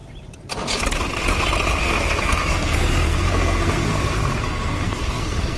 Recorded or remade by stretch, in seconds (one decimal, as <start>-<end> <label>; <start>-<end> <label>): 0.0-1.8 recorded; 1.8-5.6 remade